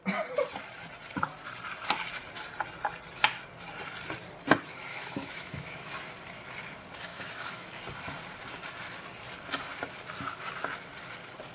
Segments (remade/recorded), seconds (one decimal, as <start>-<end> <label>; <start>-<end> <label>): 0.0-4.9 recorded; 4.9-5.9 remade; 5.9-7.1 recorded; 7.1-7.7 remade; 7.7-11.5 recorded